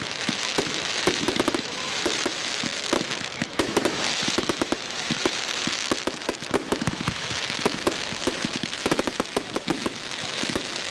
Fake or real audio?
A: fake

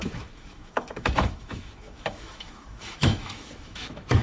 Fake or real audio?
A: fake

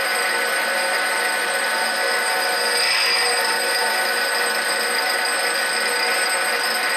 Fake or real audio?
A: real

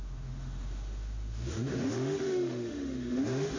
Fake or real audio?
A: fake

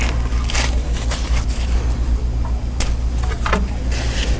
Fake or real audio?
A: real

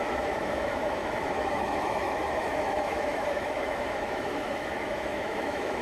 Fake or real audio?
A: fake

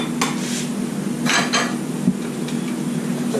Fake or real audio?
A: real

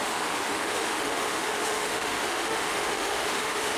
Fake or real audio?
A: fake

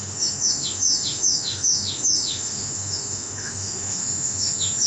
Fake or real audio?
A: fake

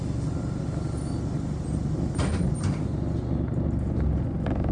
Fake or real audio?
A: real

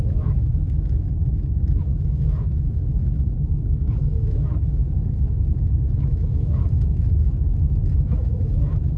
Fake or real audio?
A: fake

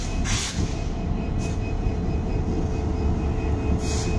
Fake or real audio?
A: real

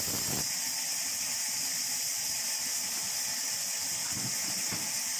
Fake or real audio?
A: real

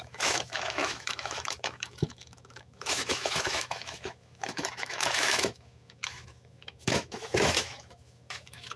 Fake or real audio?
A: fake